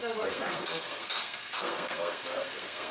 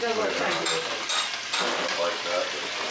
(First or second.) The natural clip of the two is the second